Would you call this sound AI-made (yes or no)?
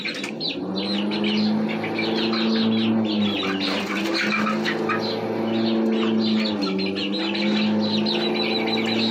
no